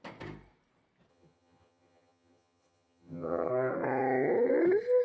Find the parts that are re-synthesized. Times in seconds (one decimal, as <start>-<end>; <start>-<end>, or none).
1.1-3.5